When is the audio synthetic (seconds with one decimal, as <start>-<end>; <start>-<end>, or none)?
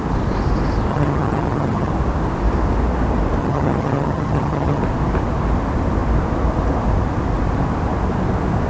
0.9-1.9; 3.4-4.8